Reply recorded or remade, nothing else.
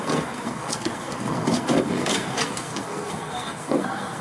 remade